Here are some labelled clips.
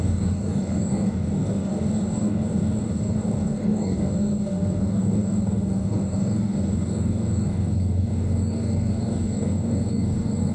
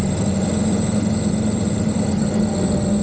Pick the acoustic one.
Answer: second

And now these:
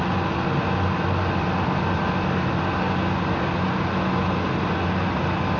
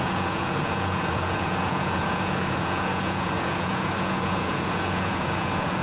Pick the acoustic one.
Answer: first